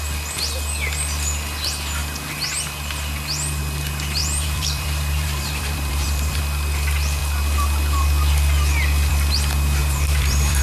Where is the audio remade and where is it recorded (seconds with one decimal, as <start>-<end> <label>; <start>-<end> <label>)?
0.0-4.2 recorded; 4.2-6.4 remade; 6.4-9.8 recorded; 9.8-10.6 remade